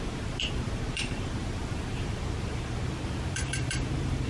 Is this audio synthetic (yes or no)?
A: yes